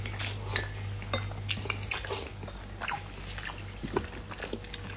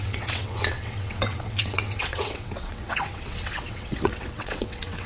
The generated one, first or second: second